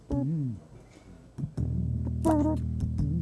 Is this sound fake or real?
real